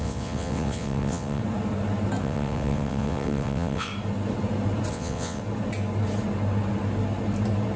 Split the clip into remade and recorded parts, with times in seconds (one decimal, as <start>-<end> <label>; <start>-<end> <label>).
0.0-1.4 remade; 1.4-2.2 recorded; 2.2-3.9 remade; 3.9-4.9 recorded; 4.9-5.4 remade; 5.4-7.8 recorded